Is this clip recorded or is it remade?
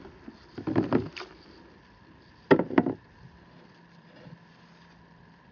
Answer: recorded